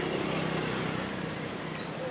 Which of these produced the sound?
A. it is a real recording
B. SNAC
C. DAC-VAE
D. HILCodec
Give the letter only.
A